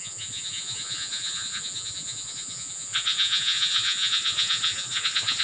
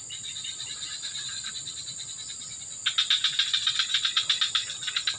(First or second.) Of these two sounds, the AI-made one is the first